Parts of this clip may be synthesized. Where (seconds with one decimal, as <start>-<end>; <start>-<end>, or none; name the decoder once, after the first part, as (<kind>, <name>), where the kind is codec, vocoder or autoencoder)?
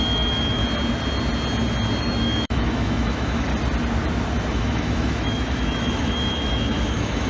0.0-0.6 (autoencoder, DAC-VAE); 2.0-3.5; 4.5-7.3